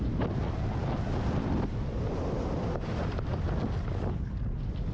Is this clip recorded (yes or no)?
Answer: yes